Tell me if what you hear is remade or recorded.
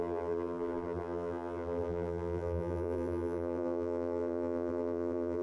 remade